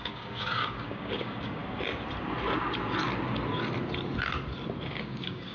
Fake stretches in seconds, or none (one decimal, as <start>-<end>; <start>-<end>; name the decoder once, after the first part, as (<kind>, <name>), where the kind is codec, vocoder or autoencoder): 0.0-1.6 (codec, DAC); 4.9-5.5